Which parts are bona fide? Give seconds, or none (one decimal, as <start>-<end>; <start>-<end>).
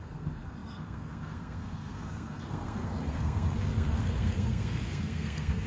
none